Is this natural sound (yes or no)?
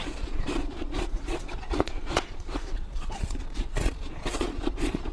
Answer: no